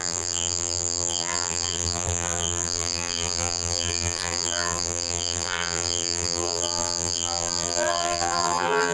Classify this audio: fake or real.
fake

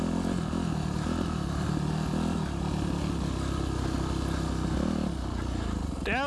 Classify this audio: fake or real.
real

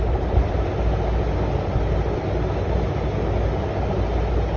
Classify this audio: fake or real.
real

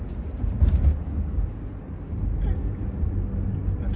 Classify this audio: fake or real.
real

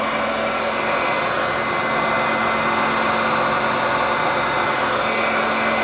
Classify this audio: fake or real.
real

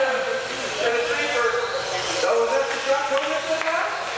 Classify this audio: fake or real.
real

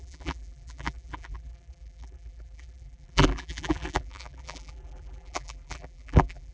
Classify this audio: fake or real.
fake